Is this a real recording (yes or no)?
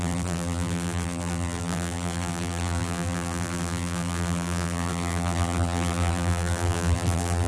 no